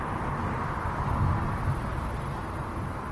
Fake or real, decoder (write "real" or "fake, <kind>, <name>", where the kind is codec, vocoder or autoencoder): real